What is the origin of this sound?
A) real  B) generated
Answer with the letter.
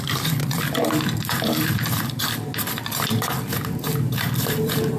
B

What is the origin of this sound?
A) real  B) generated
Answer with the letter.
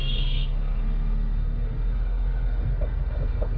B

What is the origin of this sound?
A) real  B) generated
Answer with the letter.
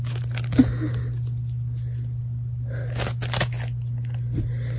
A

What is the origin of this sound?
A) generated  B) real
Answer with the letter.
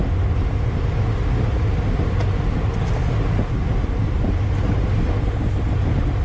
B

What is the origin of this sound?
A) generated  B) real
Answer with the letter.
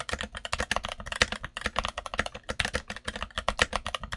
B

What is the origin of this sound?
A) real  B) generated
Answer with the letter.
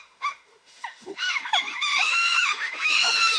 B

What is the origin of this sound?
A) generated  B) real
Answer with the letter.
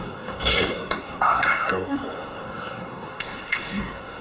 A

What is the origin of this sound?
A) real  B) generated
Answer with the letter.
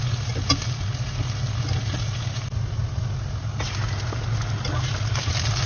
A